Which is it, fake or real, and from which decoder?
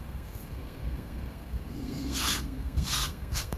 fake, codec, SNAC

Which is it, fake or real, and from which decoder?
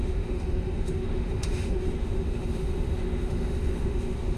fake, autoencoder, DAC-VAE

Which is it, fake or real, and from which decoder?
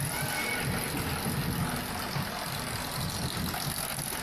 real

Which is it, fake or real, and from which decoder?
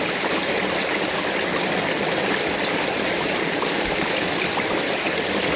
real